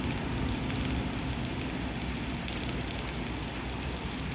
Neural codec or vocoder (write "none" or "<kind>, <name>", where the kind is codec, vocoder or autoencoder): none